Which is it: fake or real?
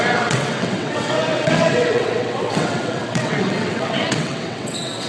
fake